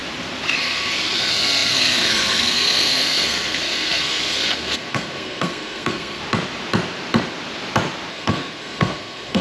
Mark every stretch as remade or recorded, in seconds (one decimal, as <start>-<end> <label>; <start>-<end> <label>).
0.0-0.6 recorded; 0.6-6.2 remade; 6.2-8.1 recorded; 8.1-9.4 remade

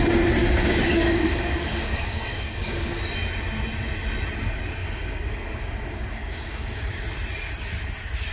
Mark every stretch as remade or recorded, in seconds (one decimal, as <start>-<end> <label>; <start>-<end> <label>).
0.0-0.4 recorded; 0.4-3.0 remade; 3.0-4.8 recorded; 4.8-6.9 remade; 6.9-8.3 recorded

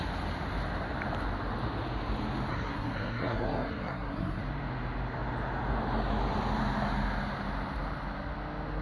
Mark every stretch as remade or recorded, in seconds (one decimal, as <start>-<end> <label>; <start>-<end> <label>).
0.0-2.5 recorded; 2.5-4.4 remade; 4.4-8.8 recorded

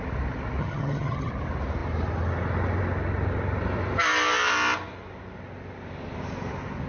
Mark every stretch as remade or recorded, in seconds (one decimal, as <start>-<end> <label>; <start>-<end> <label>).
0.0-0.6 recorded; 0.6-1.3 remade; 1.3-6.9 recorded